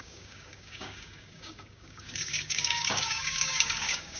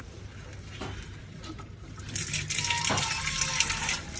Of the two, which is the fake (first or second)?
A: first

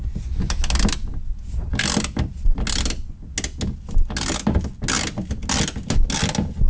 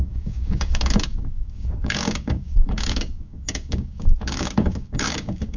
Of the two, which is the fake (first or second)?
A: second